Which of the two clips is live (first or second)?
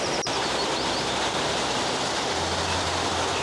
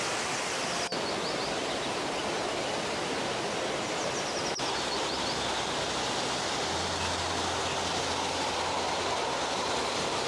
second